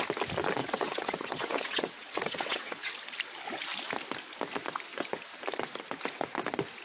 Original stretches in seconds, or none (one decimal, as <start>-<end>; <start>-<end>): 0.0-0.6; 2.9-6.8